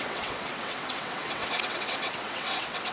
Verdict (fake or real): fake